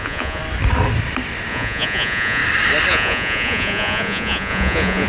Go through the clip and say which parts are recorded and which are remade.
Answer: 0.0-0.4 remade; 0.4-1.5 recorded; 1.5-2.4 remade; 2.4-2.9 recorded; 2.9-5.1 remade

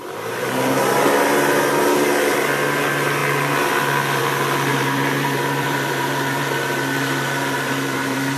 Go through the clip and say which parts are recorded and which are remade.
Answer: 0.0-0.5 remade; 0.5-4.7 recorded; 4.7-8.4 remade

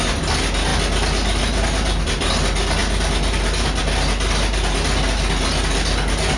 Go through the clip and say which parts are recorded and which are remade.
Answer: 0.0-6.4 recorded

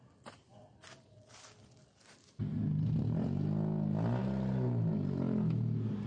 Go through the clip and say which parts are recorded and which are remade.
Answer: 0.0-6.1 recorded